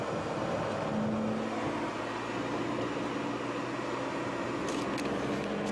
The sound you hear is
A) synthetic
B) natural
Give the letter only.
B